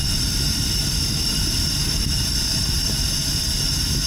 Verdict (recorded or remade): recorded